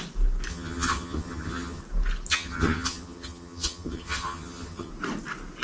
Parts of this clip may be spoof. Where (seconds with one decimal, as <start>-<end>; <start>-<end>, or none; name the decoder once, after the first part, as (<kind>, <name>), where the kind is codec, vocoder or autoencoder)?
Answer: 0.5-1.8 (vocoder, HiFi-GAN); 2.3-4.9